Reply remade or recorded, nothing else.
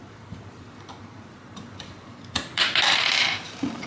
remade